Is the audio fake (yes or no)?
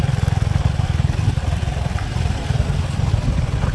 no